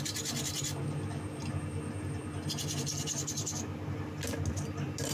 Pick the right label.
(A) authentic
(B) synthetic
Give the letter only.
A